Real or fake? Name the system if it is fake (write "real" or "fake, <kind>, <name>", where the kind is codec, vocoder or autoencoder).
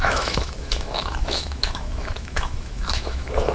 fake, autoencoder, DAC-VAE